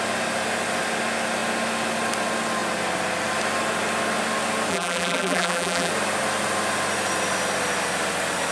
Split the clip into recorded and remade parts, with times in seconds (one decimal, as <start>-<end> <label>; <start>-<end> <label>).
0.0-4.7 recorded; 4.7-5.9 remade; 5.9-8.5 recorded